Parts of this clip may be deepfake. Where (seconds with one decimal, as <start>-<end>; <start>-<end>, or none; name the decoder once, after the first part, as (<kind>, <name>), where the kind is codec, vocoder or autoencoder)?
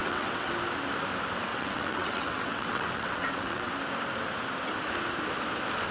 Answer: 0.0-0.5 (vocoder, WaveNeXt); 1.5-3.7